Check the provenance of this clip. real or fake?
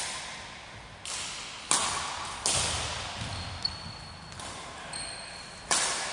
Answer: real